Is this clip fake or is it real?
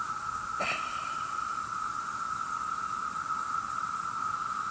fake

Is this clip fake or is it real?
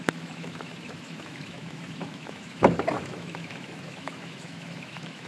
fake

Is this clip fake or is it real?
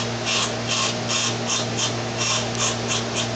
real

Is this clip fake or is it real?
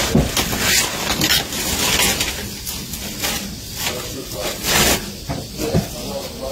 real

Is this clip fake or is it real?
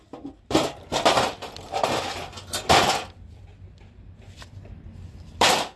fake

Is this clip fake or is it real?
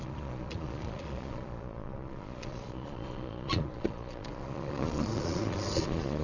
fake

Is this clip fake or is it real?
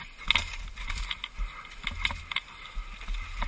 real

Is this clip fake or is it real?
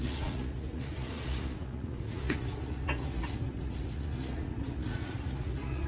fake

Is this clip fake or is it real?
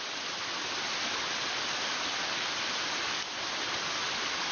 real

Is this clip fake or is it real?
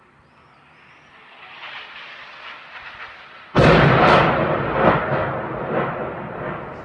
real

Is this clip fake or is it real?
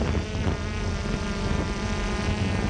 real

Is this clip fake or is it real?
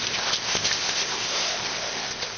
fake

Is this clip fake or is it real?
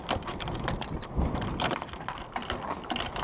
real